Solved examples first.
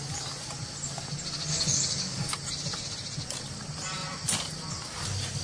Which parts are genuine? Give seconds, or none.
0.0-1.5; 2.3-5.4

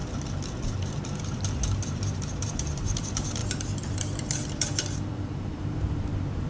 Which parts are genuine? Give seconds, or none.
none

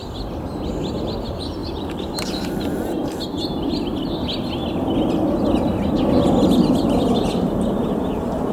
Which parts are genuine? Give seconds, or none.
0.0-1.6; 2.5-8.5

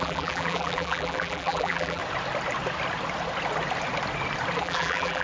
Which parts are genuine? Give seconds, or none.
2.0-4.6